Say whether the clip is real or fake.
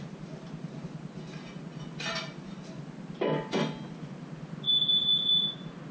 real